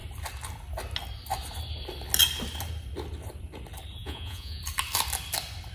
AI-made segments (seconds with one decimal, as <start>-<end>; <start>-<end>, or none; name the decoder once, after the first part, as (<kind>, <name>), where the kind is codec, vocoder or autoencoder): 4.0-4.6 (vocoder, Vocos)